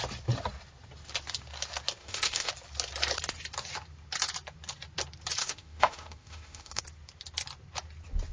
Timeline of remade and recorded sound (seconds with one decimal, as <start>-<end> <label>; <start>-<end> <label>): 0.0-2.0 recorded; 2.0-2.5 remade; 2.5-5.4 recorded; 5.4-6.8 remade; 6.8-8.3 recorded